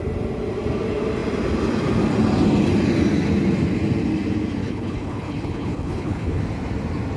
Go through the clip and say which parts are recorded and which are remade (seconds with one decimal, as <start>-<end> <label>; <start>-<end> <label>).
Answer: 0.0-4.6 recorded; 4.6-6.4 remade; 6.4-7.2 recorded